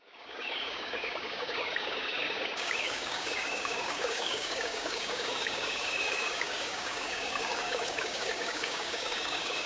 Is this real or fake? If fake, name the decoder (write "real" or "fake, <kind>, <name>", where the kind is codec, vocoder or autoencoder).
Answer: fake, codec, DAC